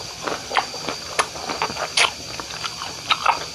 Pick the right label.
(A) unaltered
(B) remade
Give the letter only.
A